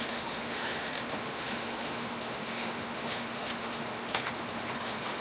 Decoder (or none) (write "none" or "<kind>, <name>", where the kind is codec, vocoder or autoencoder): autoencoder, DAC-VAE